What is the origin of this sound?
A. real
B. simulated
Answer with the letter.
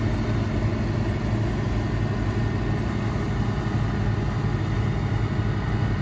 A